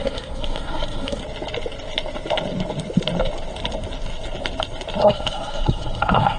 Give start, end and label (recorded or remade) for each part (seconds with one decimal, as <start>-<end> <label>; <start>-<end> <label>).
0.0-1.2 remade; 1.2-5.0 recorded; 5.0-6.4 remade